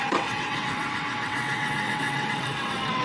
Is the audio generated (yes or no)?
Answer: yes